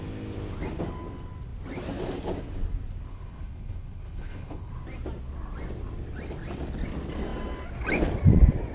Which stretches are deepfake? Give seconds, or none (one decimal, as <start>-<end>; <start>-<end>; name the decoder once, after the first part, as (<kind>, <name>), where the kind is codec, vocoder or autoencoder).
3.1-4.7 (codec, HILCodec)